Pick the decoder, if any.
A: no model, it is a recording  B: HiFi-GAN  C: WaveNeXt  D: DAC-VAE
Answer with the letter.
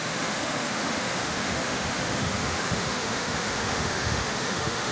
D